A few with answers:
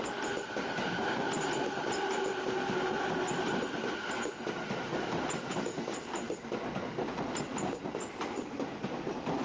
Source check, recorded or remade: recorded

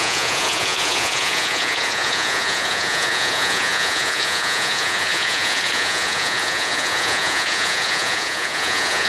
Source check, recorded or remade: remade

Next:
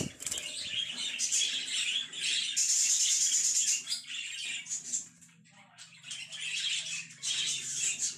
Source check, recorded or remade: recorded